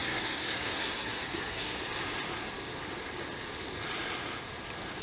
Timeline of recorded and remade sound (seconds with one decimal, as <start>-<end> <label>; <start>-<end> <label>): 0.0-1.8 remade; 1.8-5.0 recorded